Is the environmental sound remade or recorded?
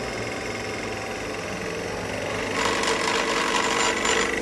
recorded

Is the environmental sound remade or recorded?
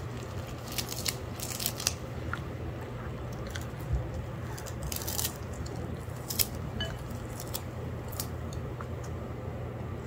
recorded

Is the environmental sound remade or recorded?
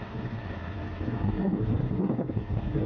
remade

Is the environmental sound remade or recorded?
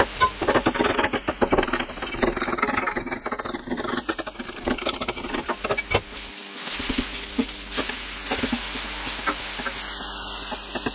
recorded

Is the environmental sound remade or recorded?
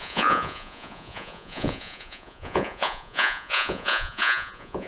remade